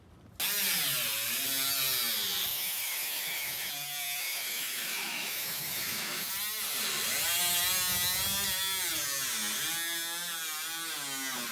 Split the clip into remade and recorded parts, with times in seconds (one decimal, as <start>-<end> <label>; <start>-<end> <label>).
0.0-2.5 recorded; 2.5-3.7 remade; 3.7-4.2 recorded; 4.2-6.3 remade; 6.3-11.5 recorded